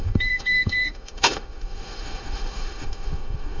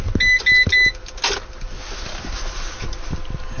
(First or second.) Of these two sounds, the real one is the second